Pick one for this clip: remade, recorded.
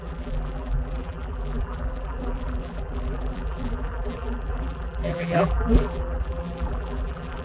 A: remade